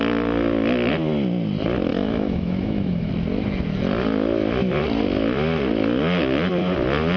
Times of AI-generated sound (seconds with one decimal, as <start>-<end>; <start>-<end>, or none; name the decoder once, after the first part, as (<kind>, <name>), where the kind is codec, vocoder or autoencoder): 1.9-3.1 (autoencoder, DAC-VAE)